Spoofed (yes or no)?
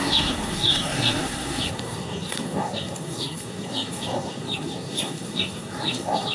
yes